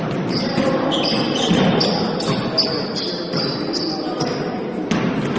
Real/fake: real